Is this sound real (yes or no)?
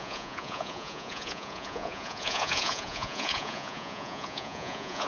no